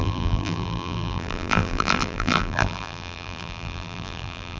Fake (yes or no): yes